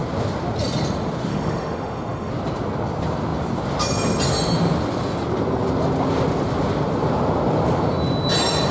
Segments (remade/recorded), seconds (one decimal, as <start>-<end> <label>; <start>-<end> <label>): 0.0-1.3 recorded; 1.3-2.3 remade; 2.3-8.7 recorded